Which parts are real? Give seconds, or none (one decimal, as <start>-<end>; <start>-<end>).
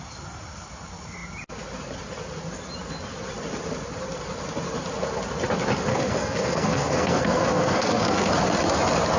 0.0-5.9; 8.3-9.2